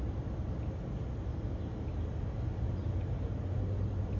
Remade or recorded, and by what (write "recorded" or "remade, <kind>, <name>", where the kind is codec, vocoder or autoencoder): recorded